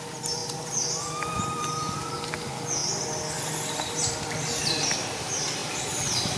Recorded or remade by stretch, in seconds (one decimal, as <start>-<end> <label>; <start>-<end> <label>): 0.0-6.4 recorded